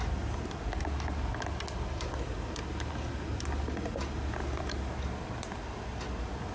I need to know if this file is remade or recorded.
recorded